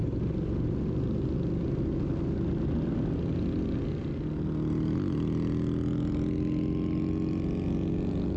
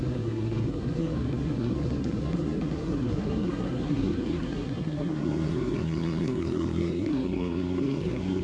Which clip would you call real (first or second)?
first